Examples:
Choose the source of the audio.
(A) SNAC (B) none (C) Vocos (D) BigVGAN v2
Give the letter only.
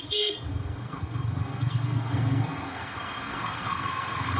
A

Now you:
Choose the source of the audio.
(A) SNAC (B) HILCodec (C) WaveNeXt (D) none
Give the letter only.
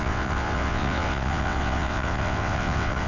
C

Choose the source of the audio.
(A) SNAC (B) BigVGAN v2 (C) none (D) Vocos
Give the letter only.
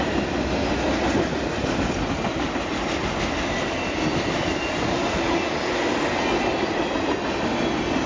C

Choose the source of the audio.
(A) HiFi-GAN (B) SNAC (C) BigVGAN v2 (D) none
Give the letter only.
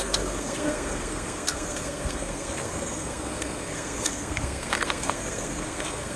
B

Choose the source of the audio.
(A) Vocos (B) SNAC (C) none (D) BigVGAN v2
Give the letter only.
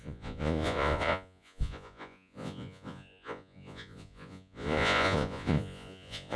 A